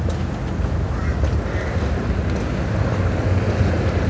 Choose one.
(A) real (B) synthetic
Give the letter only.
A